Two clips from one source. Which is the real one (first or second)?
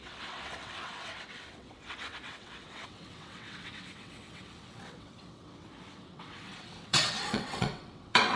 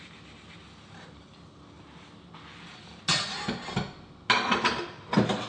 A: second